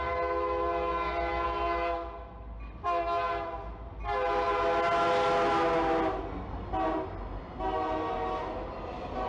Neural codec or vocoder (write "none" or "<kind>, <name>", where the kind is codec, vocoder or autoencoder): none